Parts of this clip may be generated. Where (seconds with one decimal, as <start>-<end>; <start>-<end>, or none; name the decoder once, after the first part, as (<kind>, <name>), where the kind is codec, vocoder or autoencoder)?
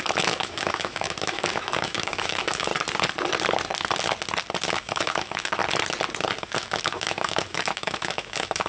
0.0-2.7 (autoencoder, DAC-VAE); 4.7-5.6; 6.4-8.7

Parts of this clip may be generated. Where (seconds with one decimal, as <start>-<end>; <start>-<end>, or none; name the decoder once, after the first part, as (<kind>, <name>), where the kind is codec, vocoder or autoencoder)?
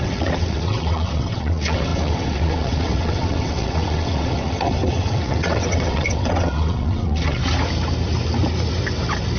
0.0-7.4 (vocoder, WaveNeXt)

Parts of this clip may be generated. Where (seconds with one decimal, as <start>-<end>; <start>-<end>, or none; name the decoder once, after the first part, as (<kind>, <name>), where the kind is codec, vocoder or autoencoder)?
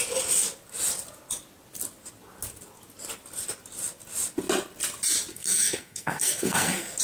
5.3-7.0 (codec, SNAC)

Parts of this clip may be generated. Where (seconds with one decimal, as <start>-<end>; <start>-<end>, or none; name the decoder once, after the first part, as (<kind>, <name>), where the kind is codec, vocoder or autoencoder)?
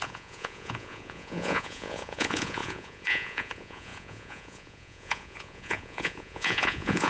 0.0-7.1 (vocoder, Vocos)